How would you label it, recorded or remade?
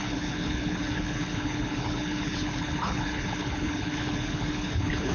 remade